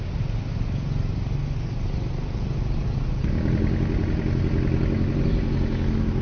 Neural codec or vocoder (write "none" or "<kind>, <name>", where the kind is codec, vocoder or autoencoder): none